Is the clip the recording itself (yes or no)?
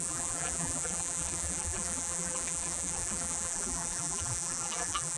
no